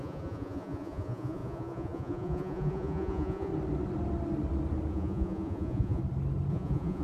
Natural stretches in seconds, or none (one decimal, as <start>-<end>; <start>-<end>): 3.5-4.9; 6.0-6.5